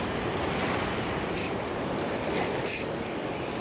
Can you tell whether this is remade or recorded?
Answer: recorded